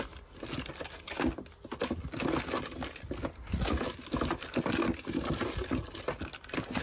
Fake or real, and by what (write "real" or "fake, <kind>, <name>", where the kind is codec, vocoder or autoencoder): real